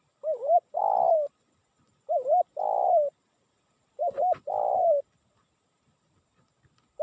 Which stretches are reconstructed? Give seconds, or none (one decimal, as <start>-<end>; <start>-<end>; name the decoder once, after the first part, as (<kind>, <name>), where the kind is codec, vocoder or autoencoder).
0.0-0.8 (vocoder, BigVGAN v2); 3.4-4.0; 5.6-7.0